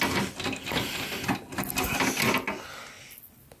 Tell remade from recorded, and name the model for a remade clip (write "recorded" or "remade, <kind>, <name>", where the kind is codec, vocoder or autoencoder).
recorded